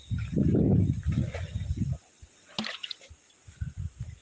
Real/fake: real